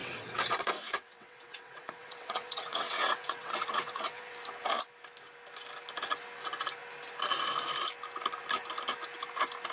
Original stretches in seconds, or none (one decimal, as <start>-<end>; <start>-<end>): 4.3-9.7